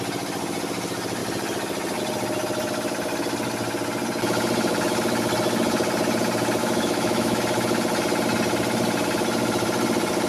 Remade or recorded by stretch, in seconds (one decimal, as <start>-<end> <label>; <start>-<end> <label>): 0.0-6.6 recorded; 6.6-7.4 remade; 7.4-10.3 recorded